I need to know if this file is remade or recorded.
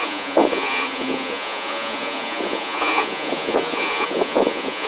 remade